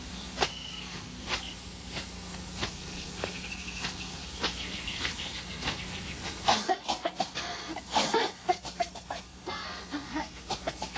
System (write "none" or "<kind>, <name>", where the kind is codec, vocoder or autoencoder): codec, SNAC